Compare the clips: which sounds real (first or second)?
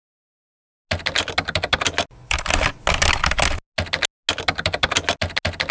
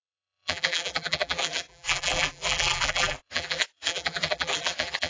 first